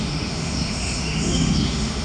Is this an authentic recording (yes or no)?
no